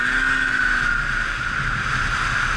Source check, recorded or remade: recorded